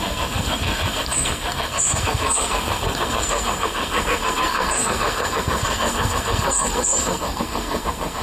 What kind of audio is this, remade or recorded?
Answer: remade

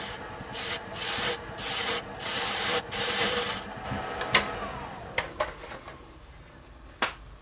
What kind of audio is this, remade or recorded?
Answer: recorded